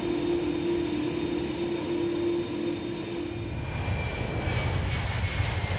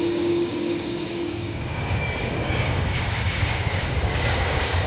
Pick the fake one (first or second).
second